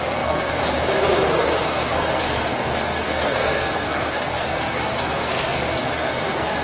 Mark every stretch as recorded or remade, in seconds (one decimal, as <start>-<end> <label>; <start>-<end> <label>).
0.0-0.6 remade; 0.6-1.4 recorded; 1.4-6.6 remade